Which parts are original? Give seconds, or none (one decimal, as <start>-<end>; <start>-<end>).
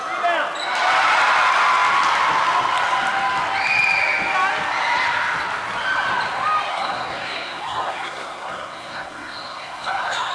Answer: 0.0-6.7